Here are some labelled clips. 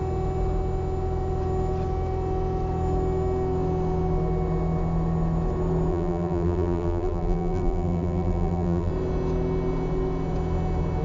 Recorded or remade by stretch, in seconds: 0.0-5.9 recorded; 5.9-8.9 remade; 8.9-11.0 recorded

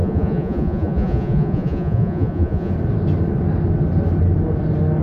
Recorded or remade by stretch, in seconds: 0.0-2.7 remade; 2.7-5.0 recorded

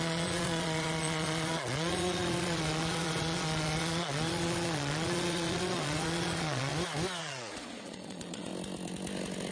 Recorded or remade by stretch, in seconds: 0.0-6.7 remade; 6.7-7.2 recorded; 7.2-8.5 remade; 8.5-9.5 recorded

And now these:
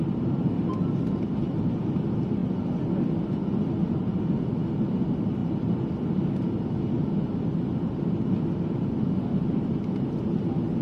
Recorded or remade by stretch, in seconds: 0.0-0.7 recorded; 0.7-1.7 remade; 1.7-5.4 recorded; 5.4-6.2 remade; 6.2-10.8 recorded

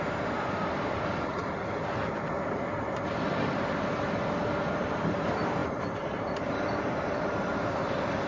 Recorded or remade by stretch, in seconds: 0.0-8.3 remade